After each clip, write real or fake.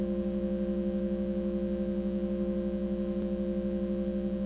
real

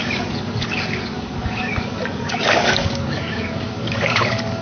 fake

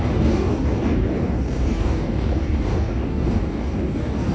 fake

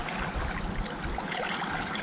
real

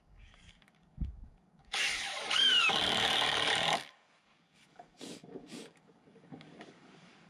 fake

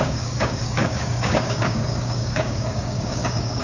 fake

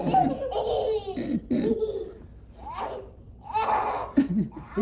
real